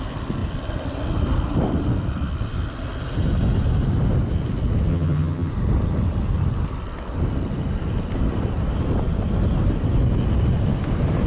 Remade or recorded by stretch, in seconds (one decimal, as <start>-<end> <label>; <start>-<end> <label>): 0.0-4.9 recorded; 4.9-5.5 remade; 5.5-11.3 recorded